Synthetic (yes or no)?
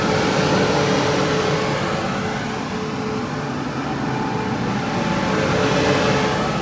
no